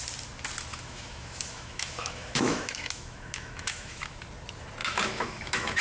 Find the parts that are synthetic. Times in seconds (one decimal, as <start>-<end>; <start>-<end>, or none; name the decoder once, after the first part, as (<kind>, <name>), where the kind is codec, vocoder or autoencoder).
0.7-4.2 (autoencoder, DAC-VAE); 4.8-5.8